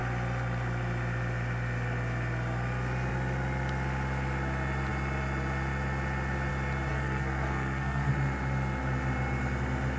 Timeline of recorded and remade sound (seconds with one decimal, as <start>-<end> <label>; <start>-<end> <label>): 0.0-6.9 recorded; 6.9-8.1 remade; 8.1-10.0 recorded